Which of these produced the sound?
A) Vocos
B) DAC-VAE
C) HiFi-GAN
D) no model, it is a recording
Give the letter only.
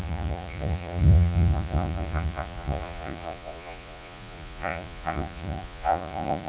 A